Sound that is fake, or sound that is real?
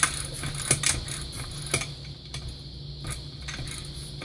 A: real